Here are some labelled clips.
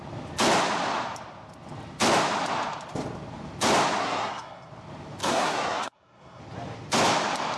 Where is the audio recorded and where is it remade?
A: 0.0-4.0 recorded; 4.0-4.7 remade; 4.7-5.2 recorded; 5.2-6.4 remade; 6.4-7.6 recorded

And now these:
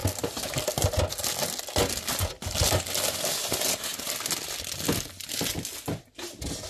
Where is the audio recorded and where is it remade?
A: 0.0-6.7 recorded

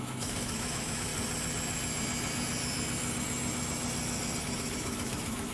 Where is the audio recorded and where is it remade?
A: 0.0-1.1 remade; 1.1-4.4 recorded; 4.4-5.5 remade

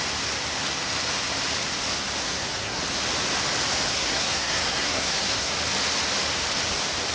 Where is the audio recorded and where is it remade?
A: 0.0-2.2 recorded; 2.2-2.8 remade; 2.8-3.9 recorded; 3.9-5.5 remade; 5.5-7.1 recorded

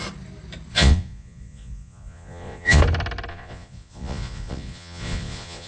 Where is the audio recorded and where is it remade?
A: 0.0-0.7 recorded; 0.7-2.8 remade; 2.8-3.3 recorded; 3.3-5.7 remade

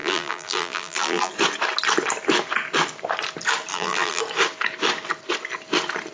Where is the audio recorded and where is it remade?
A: 0.0-1.3 remade; 1.3-3.7 recorded; 3.7-4.2 remade; 4.2-6.1 recorded

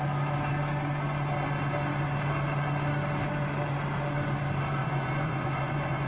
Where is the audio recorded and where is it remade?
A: 0.0-4.8 recorded; 4.8-6.1 remade